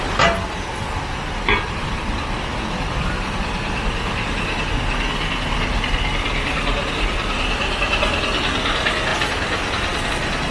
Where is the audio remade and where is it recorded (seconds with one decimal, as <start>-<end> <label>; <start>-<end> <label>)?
0.0-10.5 recorded

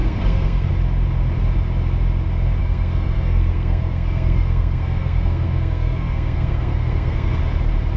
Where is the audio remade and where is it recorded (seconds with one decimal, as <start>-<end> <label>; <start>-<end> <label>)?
0.0-0.7 remade; 0.7-2.6 recorded; 2.6-7.4 remade; 7.4-8.0 recorded

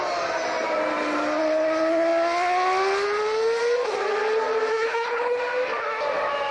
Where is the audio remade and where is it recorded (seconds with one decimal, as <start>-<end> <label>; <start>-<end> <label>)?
0.0-4.7 recorded; 4.7-5.4 remade; 5.4-6.5 recorded

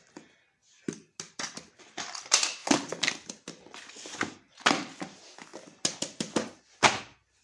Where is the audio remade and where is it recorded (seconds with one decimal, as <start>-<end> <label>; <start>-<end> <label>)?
0.0-0.6 recorded; 0.6-1.2 remade; 1.2-2.6 recorded; 2.6-3.3 remade; 3.3-7.4 recorded